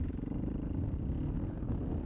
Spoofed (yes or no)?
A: no